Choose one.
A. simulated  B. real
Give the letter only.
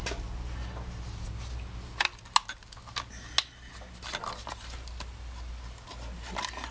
B